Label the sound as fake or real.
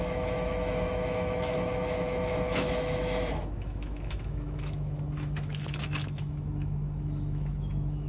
fake